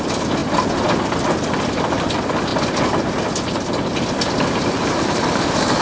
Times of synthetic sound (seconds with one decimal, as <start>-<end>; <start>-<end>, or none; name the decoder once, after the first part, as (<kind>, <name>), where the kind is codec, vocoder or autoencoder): none